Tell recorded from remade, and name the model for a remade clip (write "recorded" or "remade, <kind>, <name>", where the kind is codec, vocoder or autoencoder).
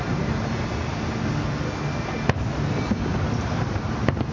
recorded